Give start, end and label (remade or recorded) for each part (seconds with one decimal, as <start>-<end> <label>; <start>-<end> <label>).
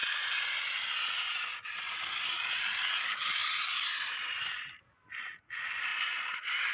0.0-6.7 recorded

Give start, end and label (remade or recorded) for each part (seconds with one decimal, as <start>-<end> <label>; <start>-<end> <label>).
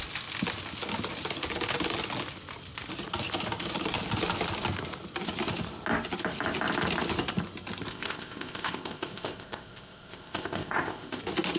0.0-7.9 recorded; 7.9-11.2 remade; 11.2-11.6 recorded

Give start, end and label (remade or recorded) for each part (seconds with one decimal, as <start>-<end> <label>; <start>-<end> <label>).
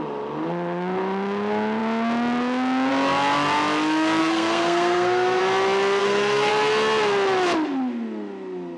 0.0-4.2 recorded; 4.2-5.4 remade; 5.4-6.0 recorded; 6.0-6.5 remade; 6.5-8.8 recorded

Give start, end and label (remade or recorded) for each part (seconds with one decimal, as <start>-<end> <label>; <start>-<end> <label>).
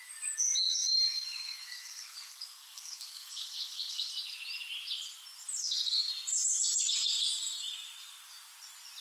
0.0-0.7 recorded; 0.7-4.1 remade; 4.1-5.6 recorded; 5.6-6.1 remade; 6.1-9.0 recorded